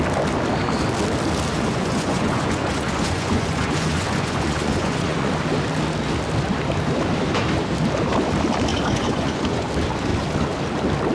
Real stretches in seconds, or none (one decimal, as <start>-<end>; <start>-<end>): 0.0-1.5; 5.3-8.7; 9.7-11.1